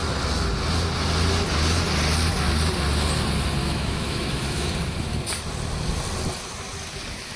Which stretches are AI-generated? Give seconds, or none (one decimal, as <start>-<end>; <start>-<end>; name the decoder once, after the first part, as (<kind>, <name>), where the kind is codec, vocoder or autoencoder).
3.6-4.7 (autoencoder, DAC-VAE)